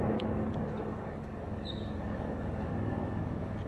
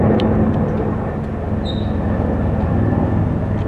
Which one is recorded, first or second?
second